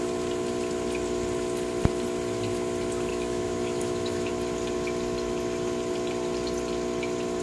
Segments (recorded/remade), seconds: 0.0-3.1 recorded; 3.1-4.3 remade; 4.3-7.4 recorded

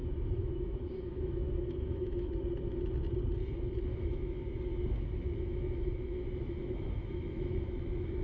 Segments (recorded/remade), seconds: 0.0-2.3 remade; 2.3-3.9 recorded; 3.9-8.2 remade

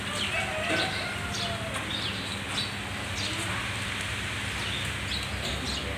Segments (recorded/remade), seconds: 0.0-6.0 recorded